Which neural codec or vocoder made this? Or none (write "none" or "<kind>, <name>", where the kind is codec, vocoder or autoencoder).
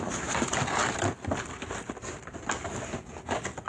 none